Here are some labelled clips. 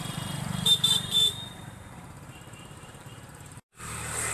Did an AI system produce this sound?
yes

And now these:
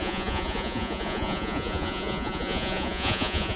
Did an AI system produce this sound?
yes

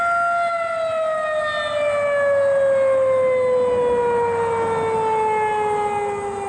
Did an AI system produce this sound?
no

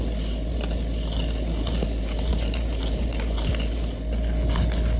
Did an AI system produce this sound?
no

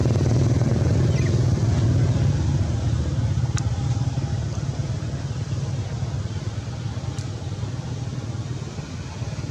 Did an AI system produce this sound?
no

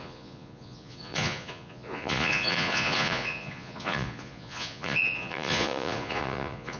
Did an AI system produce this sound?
yes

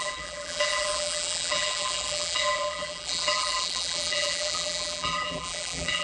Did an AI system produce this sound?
yes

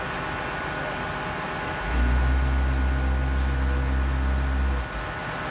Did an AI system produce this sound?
no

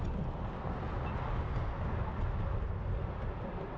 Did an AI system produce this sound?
no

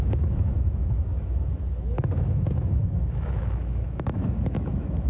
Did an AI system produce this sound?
yes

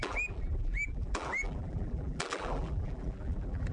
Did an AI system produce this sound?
yes